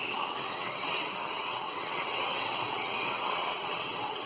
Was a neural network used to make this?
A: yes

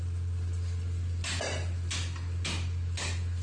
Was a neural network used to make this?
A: no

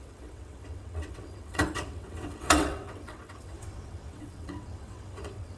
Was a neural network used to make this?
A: yes